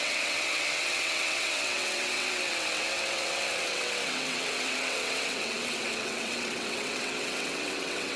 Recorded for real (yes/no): no